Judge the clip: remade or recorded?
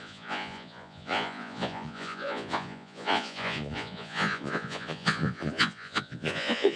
remade